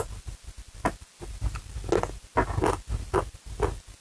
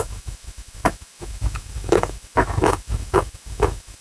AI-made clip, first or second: second